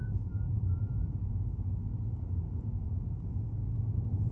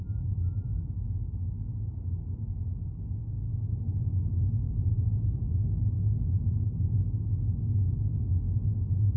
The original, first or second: second